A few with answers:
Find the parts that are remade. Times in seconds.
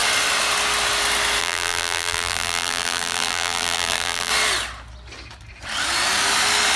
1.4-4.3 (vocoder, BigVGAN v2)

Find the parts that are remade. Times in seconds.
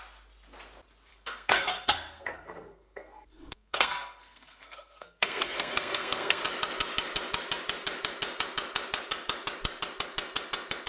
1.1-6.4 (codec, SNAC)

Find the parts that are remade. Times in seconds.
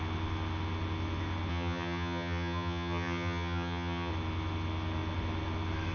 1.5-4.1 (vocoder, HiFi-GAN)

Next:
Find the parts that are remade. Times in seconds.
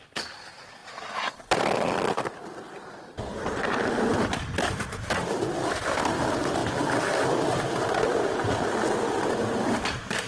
0.0-0.8 (vocoder, BigVGAN v2); 3.1-10.3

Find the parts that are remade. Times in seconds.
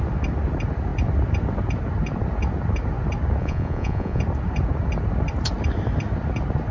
3.4-4.2 (vocoder, Vocos)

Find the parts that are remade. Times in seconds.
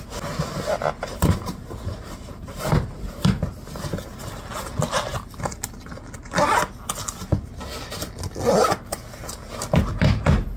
1.1-3.4 (vocoder, BigVGAN v2)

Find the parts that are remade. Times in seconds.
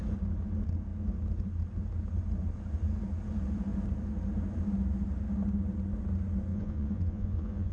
6.5-7.7 (vocoder, Vocos)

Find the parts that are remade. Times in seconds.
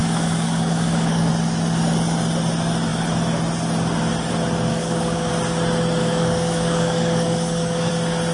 0.0-1.3 (codec, DAC); 4.7-5.3; 6.0-7.9